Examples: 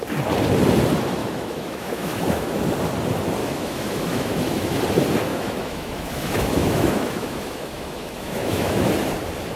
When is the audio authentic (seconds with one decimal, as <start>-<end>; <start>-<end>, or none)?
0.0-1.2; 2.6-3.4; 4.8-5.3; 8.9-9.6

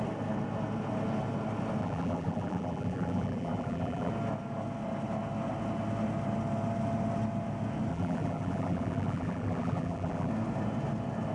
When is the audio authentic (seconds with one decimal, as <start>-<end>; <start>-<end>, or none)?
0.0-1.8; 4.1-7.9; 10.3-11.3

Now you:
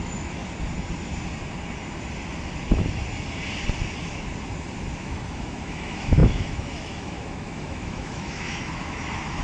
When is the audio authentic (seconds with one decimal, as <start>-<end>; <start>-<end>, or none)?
0.4-5.0

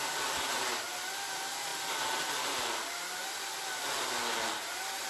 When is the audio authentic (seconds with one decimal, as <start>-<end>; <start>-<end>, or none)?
0.0-5.1